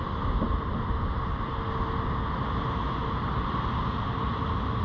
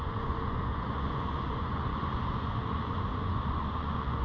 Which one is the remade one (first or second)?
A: second